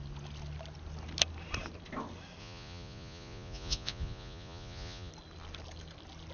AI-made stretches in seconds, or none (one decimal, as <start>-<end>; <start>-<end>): 2.4-5.1